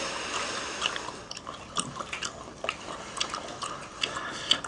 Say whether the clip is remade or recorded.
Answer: recorded